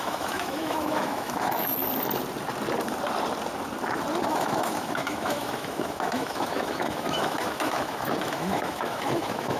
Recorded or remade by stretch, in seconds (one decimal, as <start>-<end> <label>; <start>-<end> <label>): 0.0-1.8 remade; 1.8-4.2 recorded; 4.2-9.6 remade